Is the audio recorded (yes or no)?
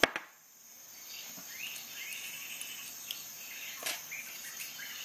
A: yes